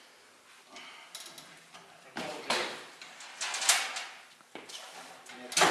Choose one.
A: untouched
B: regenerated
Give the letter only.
A